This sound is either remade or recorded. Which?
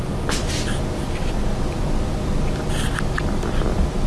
recorded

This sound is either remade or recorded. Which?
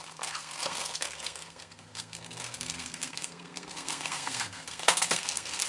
remade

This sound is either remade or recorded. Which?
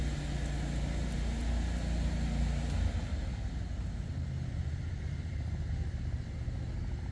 recorded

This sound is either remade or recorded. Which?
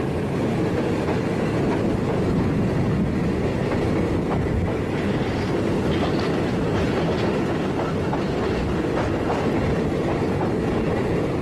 recorded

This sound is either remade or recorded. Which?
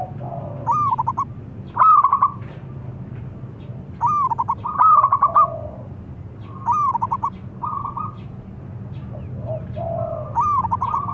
recorded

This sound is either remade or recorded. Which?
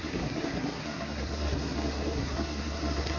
remade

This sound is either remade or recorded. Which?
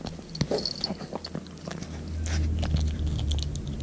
recorded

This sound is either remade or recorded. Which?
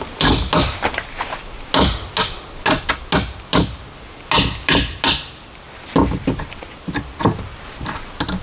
recorded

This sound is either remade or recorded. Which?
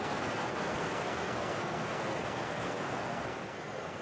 remade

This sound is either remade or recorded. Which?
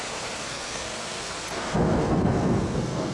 remade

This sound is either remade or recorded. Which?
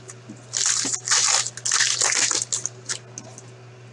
recorded